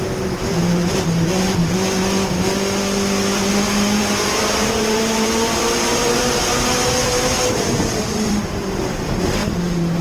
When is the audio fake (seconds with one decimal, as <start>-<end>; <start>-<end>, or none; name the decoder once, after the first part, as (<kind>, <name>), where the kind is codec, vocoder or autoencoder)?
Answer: 0.0-1.6 (vocoder, BigVGAN v2); 3.5-9.4